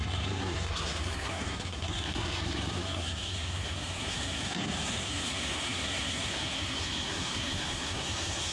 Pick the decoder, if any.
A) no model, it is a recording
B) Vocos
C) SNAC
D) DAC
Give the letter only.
C